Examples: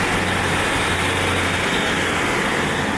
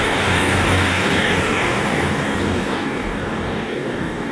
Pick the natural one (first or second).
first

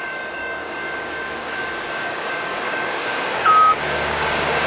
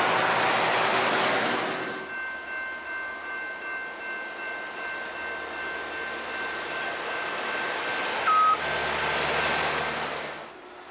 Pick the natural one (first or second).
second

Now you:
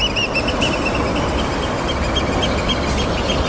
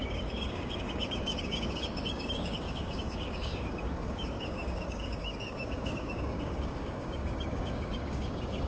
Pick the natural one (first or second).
first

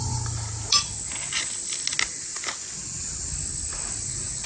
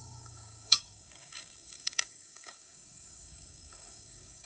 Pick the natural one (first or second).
first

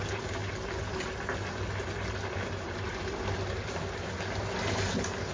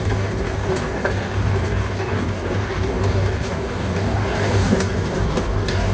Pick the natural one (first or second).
first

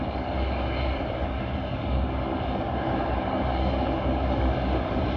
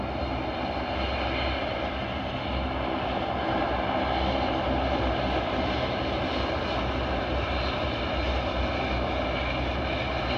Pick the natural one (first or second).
second